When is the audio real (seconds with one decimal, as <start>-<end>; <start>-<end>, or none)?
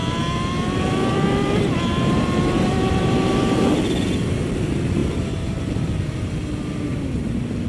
3.7-5.0; 5.9-7.7